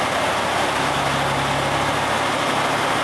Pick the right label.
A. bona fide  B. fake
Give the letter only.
A